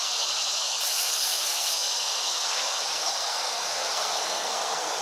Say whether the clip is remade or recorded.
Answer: remade